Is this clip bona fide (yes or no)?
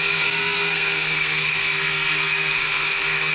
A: no